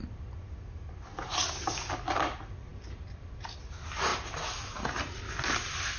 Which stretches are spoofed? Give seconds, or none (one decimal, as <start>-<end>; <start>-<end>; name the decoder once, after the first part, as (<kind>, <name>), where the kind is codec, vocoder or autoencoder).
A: none